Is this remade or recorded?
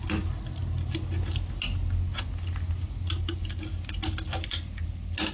recorded